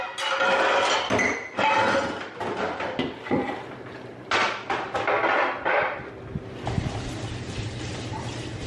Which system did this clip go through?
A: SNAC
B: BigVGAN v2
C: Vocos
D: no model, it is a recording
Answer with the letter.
D